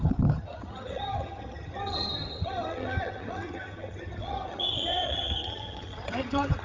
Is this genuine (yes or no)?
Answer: no